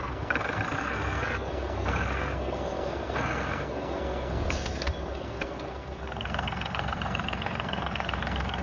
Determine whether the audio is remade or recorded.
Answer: remade